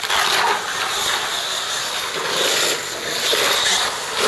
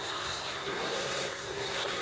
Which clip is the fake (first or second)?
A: second